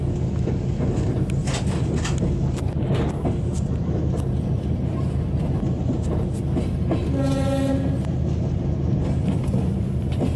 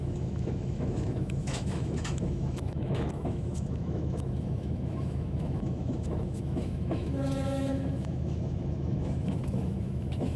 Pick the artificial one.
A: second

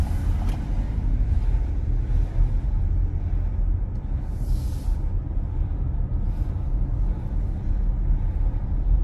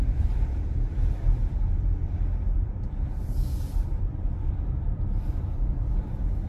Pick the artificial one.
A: second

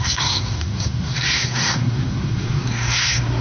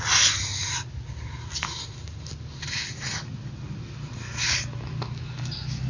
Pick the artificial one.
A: first